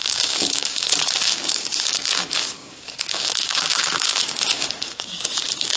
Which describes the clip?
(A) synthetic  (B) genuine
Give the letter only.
A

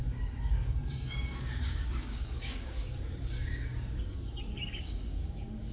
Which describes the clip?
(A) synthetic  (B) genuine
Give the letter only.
A